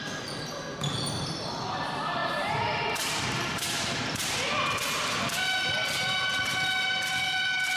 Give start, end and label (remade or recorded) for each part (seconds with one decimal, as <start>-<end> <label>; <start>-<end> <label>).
0.0-2.2 recorded; 2.2-4.0 remade; 4.0-7.8 recorded